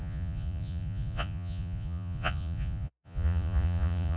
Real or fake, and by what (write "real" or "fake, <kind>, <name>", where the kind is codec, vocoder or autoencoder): fake, vocoder, Vocos